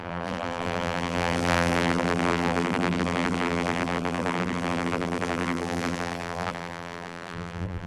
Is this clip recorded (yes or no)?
no